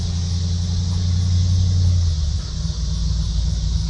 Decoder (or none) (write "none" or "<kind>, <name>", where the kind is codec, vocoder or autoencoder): none